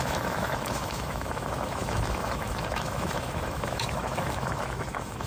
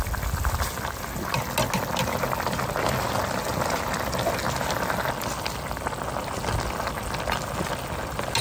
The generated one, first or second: first